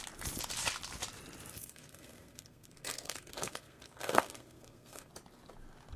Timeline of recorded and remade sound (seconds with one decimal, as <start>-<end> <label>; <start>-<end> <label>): 0.0-1.5 recorded; 1.5-5.1 remade; 5.1-6.0 recorded